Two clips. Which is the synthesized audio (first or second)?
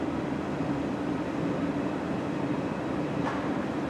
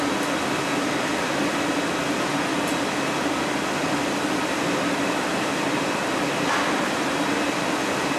first